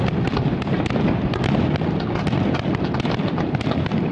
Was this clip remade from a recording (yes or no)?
no